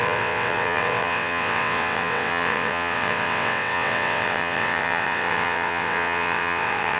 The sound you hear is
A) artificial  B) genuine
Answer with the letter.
A